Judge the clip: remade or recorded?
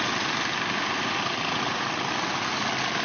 recorded